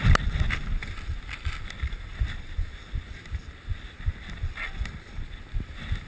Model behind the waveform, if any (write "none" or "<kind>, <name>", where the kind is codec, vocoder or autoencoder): none